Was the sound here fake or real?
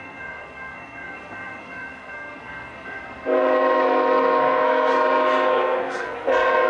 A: fake